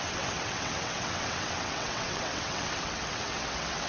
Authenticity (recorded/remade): remade